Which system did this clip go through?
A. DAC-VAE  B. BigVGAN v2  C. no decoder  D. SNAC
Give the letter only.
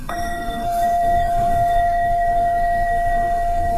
D